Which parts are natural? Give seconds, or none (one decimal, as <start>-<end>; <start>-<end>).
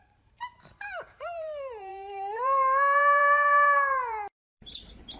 none